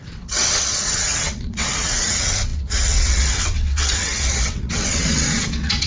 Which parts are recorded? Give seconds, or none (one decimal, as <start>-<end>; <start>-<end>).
none

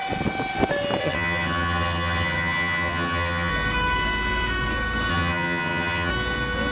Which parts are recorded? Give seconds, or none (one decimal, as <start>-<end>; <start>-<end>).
0.0-1.0; 3.5-5.1; 6.1-6.7